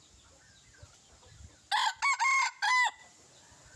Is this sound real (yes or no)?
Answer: yes